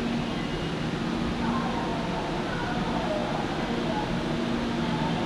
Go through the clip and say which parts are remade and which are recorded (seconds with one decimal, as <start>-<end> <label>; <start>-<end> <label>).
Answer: 0.0-5.3 recorded